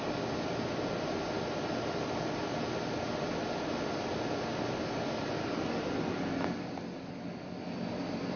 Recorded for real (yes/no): yes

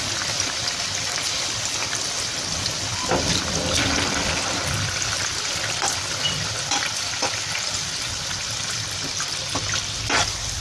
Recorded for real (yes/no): yes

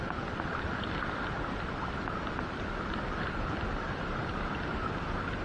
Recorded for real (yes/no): yes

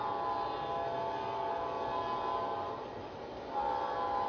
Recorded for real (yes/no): yes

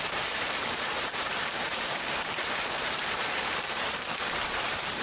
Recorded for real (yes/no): no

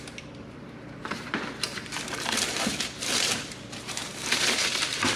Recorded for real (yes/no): no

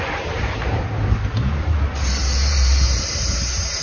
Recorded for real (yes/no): no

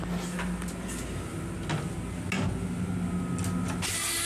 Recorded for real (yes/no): yes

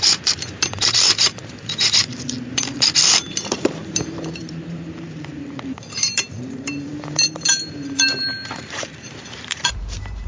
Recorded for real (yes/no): no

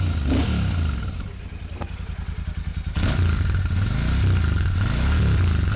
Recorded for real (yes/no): yes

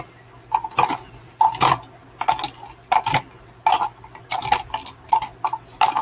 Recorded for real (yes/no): yes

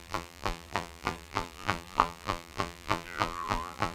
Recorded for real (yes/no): no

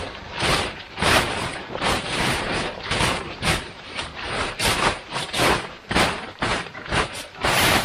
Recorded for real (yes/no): no